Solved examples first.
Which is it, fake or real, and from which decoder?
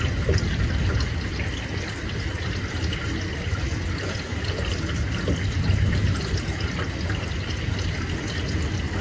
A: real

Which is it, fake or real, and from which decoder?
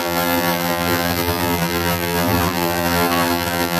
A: fake, vocoder, BigVGAN v2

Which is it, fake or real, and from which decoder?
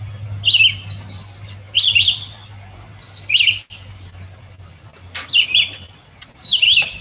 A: real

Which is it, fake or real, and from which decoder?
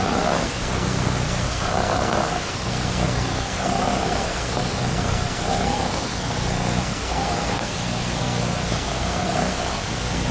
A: fake, codec, SNAC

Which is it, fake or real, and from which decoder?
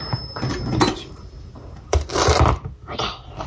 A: fake, vocoder, BigVGAN v2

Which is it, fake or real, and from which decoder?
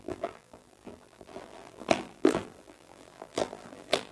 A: fake, vocoder, BigVGAN v2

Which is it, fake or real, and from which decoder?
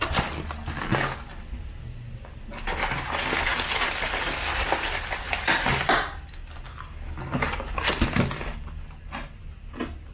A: real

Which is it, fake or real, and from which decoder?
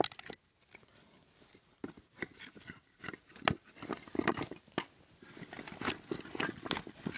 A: real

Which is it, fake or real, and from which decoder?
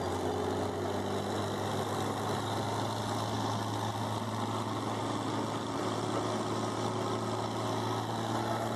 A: real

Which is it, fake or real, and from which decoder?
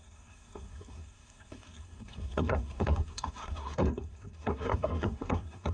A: fake, codec, SNAC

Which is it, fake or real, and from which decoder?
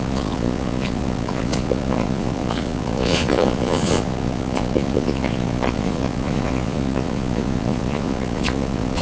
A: fake, vocoder, Vocos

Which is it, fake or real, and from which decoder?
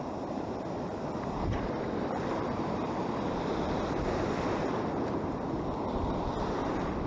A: fake, vocoder, BigVGAN v2